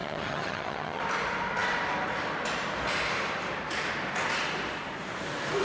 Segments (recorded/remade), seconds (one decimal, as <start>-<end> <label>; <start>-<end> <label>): 0.0-1.0 remade; 1.0-5.6 recorded